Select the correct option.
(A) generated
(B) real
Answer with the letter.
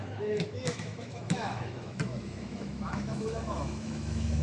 A